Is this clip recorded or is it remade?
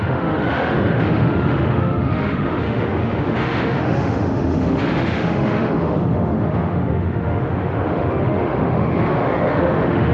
remade